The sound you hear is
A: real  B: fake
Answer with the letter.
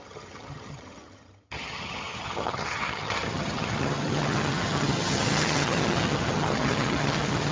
B